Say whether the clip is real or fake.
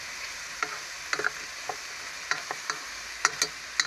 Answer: real